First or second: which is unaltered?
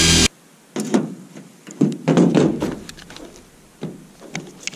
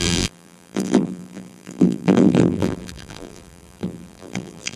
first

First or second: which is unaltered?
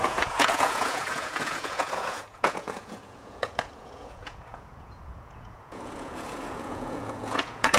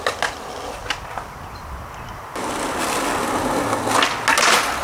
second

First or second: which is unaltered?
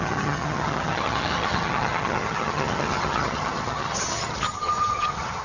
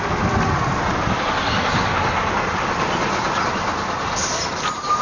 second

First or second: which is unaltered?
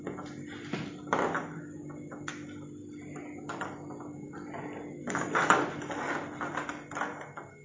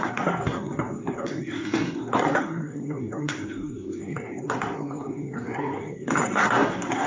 first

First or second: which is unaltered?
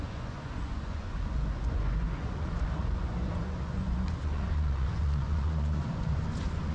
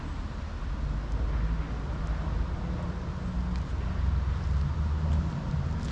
second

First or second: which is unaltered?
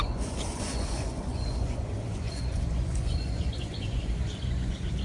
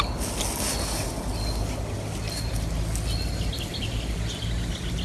second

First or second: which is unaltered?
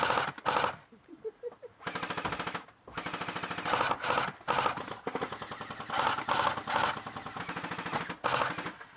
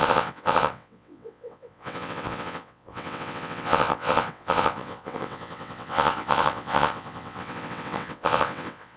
first